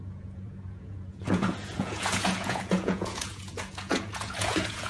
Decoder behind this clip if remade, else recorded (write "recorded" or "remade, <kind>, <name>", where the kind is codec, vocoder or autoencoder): remade, vocoder, Vocos